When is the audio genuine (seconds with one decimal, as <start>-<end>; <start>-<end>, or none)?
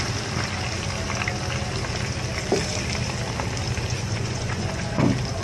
0.0-3.9; 5.0-5.4